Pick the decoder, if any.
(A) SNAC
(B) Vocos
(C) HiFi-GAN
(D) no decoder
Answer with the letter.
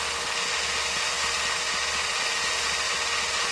D